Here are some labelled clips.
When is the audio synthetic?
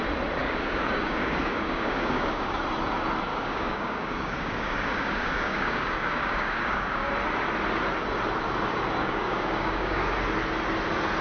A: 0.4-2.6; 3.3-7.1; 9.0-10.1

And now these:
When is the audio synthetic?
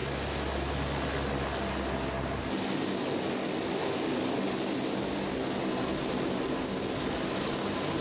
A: none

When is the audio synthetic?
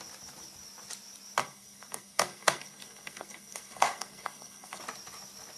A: 1.4-4.8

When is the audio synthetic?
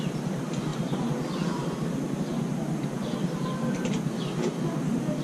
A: none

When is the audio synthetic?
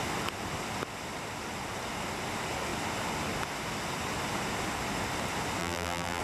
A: 5.6-6.2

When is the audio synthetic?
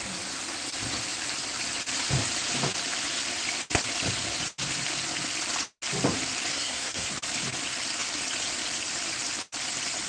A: 6.5-7.1